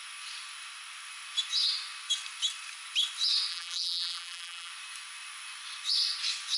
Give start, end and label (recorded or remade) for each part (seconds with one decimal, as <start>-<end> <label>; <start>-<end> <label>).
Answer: 0.0-3.5 recorded; 3.5-4.7 remade; 4.7-6.6 recorded